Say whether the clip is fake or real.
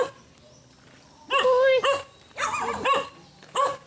real